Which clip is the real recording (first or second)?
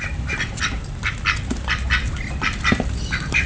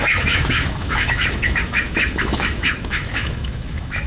first